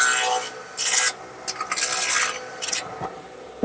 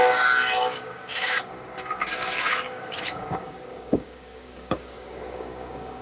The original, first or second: first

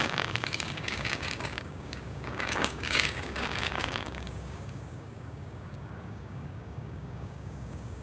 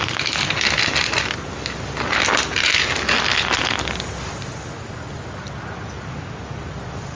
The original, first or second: second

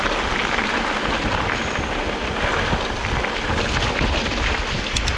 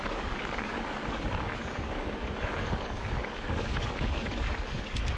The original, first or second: first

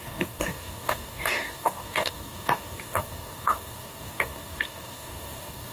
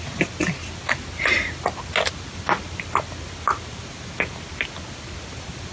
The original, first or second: second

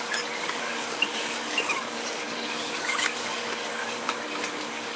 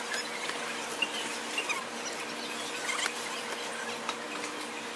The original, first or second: second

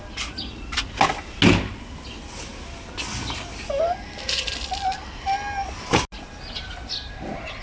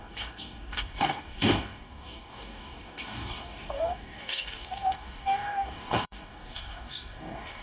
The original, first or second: first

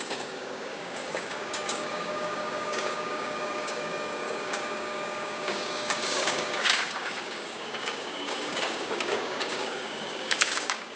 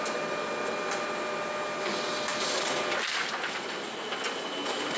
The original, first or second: second